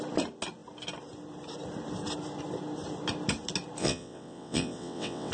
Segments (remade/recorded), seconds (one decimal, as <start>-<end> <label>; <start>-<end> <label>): 0.0-3.8 recorded; 3.8-5.3 remade